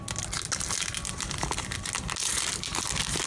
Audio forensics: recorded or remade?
recorded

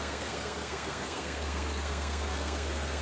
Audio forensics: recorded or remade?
remade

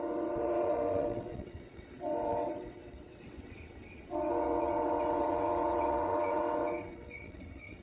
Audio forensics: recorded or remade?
remade